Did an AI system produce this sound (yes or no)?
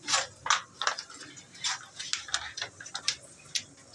no